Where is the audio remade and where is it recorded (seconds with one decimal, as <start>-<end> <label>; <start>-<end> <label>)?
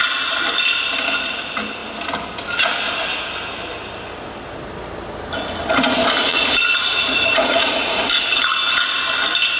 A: 0.0-6.3 recorded; 6.3-8.0 remade; 8.0-9.6 recorded